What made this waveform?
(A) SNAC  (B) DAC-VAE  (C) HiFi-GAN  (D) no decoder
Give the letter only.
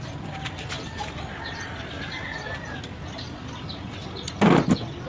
D